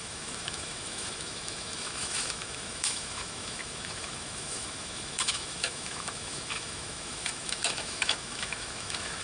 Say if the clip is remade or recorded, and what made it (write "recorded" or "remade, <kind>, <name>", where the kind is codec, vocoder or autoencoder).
remade, autoencoder, DAC-VAE